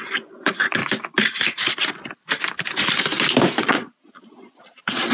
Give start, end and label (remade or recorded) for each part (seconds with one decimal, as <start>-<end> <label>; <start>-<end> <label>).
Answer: 0.0-0.8 remade; 0.8-3.7 recorded; 3.7-5.1 remade